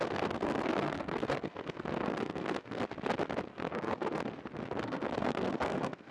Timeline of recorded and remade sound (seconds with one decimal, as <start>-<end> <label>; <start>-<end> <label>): 0.0-2.8 remade; 2.8-3.5 recorded; 3.5-4.2 remade; 4.2-4.8 recorded; 4.8-6.1 remade